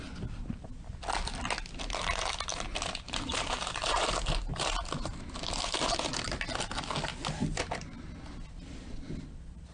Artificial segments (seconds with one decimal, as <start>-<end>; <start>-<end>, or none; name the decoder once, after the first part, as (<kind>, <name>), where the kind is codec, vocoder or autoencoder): 2.5-6.1 (vocoder, BigVGAN v2)